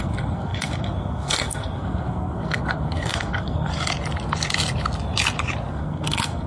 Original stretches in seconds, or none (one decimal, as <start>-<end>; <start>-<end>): 3.7-5.7